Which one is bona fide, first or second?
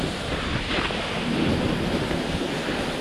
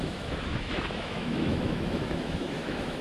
first